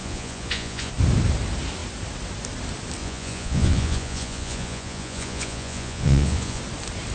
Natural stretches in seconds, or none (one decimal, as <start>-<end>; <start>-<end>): 0.9-3.0; 6.6-7.1